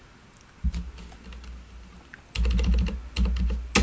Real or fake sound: real